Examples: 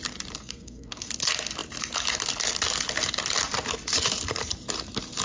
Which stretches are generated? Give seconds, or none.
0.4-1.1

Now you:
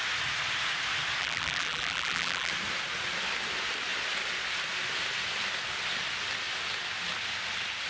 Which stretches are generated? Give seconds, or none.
1.2-2.5

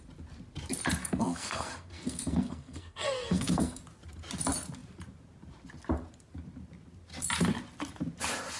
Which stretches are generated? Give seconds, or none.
1.0-3.8

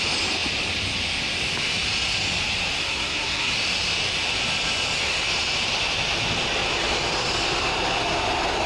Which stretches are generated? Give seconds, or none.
2.8-3.5

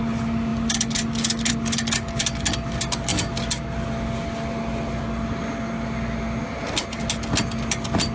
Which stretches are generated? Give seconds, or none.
none